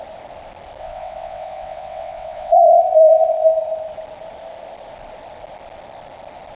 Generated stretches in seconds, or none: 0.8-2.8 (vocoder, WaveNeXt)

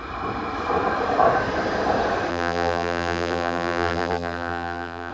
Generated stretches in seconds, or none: 2.3-5.1 (vocoder, BigVGAN v2)

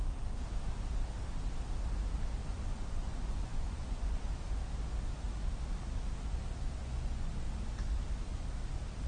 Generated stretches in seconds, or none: 2.4-4.2 (vocoder, Vocos); 6.8-7.3

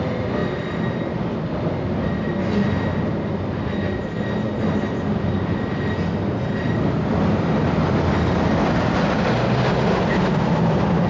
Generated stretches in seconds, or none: none

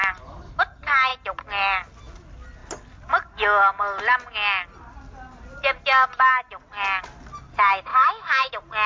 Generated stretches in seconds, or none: 7.9-8.5 (autoencoder, DAC-VAE)

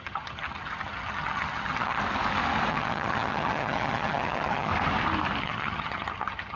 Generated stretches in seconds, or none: 0.0-2.0 (vocoder, HiFi-GAN); 2.7-4.7; 5.4-6.6

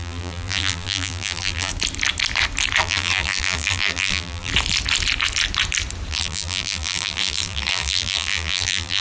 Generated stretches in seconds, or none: 0.0-1.7 (vocoder, BigVGAN v2); 2.8-4.5; 6.1-9.0